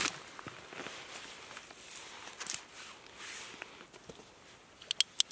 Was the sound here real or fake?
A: real